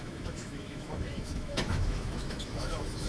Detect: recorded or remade remade